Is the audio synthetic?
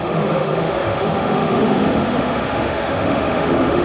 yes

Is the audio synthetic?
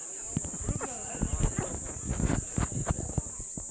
no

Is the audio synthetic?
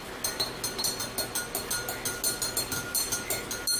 no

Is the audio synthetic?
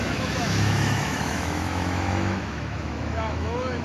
yes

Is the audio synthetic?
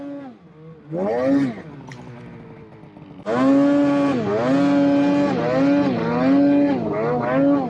no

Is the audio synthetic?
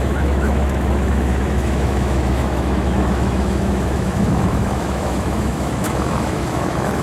yes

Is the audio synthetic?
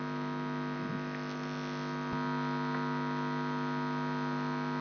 no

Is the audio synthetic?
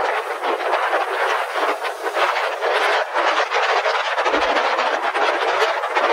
no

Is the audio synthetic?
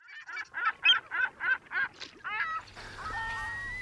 no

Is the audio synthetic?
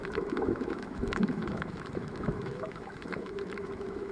yes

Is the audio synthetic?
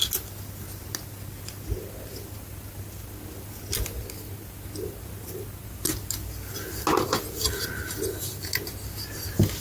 no